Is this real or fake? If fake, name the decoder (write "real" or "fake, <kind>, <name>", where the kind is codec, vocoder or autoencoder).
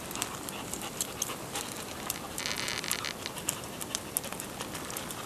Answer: real